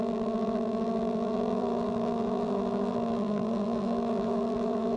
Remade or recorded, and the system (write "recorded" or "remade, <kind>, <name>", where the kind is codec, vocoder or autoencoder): remade, vocoder, BigVGAN v2